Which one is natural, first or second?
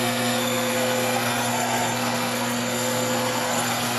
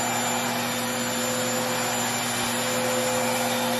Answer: second